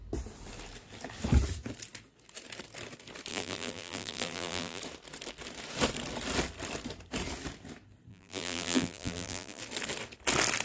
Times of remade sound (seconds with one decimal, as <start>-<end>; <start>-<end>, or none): 3.3-4.8; 8.1-9.6